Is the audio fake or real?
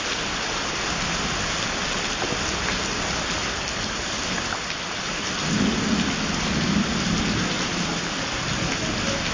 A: real